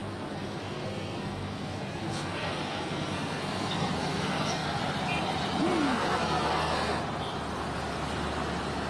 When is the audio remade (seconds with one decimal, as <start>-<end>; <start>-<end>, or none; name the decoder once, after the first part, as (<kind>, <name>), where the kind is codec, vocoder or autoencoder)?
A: 0.0-4.8 (codec, SNAC); 5.6-7.0